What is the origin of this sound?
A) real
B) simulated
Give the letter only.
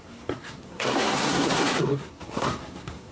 B